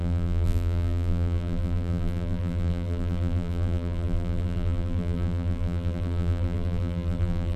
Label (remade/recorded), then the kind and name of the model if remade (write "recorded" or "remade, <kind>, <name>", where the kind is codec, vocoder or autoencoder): remade, vocoder, BigVGAN v2